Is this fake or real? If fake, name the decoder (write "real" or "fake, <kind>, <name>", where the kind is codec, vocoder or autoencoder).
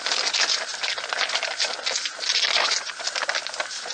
real